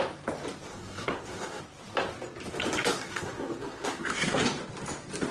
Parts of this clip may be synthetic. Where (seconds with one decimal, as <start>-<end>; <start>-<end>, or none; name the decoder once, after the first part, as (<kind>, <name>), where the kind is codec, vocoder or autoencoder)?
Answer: 0.7-1.6 (codec, SNAC); 2.9-4.4

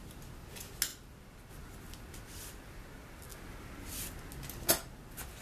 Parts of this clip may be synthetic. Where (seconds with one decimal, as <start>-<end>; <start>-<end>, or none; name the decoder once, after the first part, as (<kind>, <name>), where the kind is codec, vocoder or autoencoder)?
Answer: none

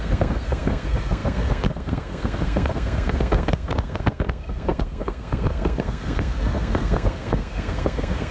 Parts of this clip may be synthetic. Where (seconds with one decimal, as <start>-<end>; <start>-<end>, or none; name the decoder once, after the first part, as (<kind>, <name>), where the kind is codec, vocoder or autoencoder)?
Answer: 0.0-8.3 (codec, SNAC)

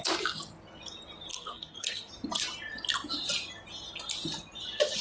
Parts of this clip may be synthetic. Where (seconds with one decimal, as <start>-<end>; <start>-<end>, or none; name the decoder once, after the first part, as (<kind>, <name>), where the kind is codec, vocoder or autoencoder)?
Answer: 1.3-2.1 (codec, SNAC)